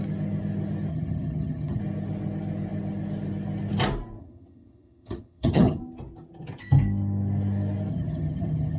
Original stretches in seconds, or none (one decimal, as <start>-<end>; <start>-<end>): 0.0-0.9; 1.8-4.2; 5.8-7.9

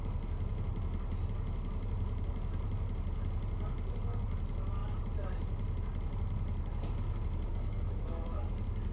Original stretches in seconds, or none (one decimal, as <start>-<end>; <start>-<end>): 0.0-7.5; 8.5-8.9